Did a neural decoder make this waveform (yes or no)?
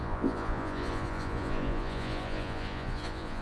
yes